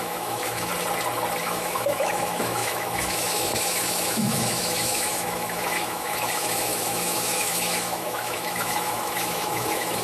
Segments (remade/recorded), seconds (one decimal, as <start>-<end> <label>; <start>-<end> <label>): 0.0-0.7 remade; 0.7-1.4 recorded; 1.4-10.0 remade